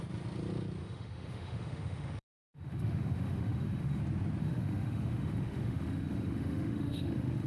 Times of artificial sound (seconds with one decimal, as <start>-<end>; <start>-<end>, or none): 0.8-4.0; 4.4-7.5